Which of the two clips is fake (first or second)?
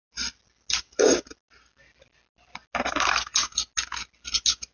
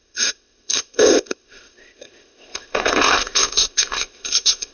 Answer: second